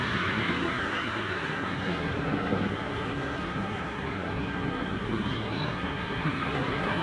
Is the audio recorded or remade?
remade